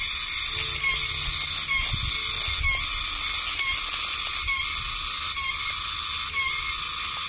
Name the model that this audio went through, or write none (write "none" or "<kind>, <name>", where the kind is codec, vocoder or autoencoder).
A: none